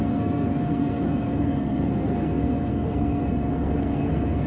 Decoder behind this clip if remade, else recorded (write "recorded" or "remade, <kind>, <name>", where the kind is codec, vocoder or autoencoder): remade, codec, SNAC